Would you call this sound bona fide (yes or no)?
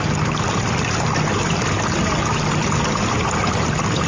yes